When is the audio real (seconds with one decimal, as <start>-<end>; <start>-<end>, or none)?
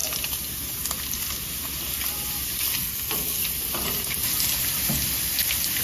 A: 0.0-2.8; 3.4-5.8